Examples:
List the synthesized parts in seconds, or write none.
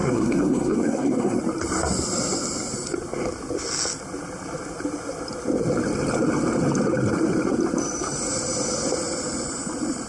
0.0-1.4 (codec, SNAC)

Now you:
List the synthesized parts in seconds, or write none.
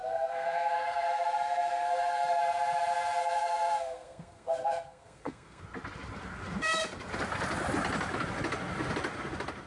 0.0-2.4 (codec, SNAC); 3.2-5.6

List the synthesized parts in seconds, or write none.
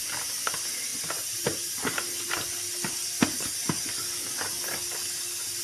none